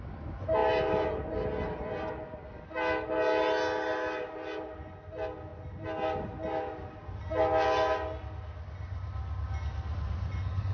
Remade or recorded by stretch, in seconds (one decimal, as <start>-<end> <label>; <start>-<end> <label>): 0.0-10.7 recorded